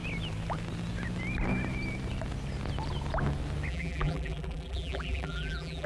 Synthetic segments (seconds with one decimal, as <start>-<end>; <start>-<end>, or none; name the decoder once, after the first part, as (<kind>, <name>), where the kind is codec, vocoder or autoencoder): 3.7-5.9 (vocoder, BigVGAN v2)